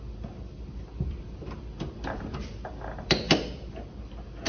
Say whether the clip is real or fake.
real